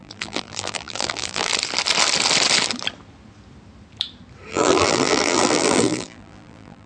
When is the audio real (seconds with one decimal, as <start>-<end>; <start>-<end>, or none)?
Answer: 1.5-4.5